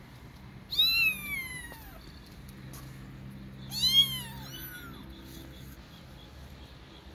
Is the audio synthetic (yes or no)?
no